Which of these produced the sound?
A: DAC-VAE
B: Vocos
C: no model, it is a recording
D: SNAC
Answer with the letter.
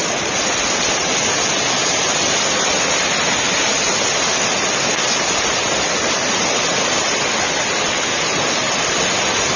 C